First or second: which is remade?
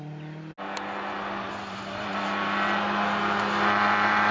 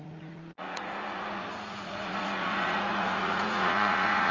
second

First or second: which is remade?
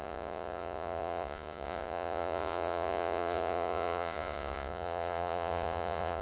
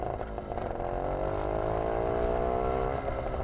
first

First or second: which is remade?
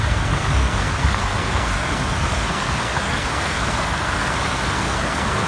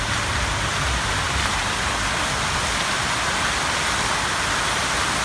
first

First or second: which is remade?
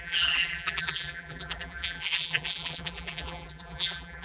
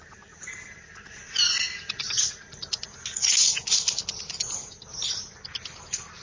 first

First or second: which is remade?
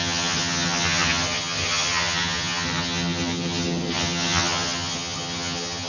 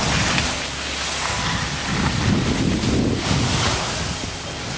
first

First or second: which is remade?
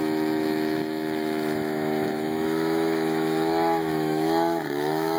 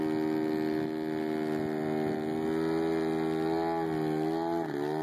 first